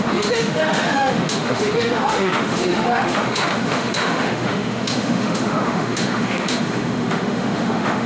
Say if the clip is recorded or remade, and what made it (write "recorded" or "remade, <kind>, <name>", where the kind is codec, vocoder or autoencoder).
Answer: remade, autoencoder, DAC-VAE